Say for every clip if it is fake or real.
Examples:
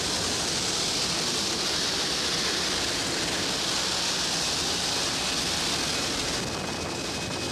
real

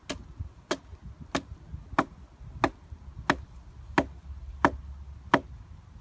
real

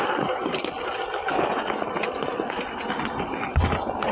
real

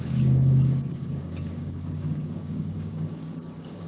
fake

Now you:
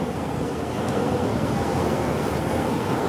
fake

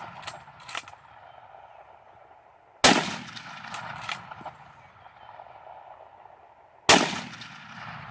real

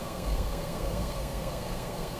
fake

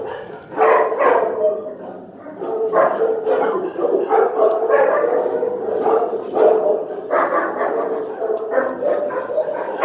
real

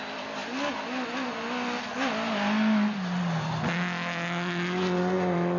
real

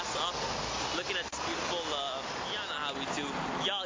real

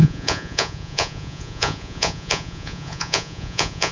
fake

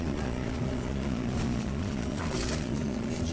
fake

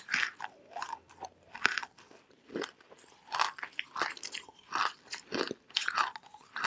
real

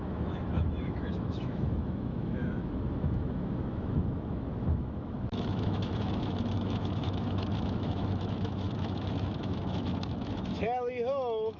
fake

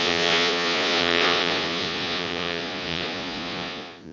fake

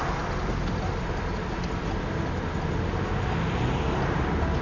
real